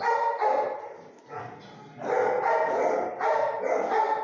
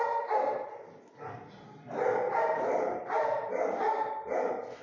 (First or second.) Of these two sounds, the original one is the first